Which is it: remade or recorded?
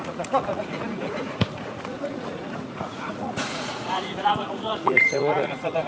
remade